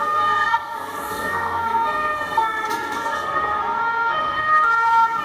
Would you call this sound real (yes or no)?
no